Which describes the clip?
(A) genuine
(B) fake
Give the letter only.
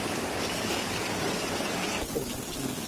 B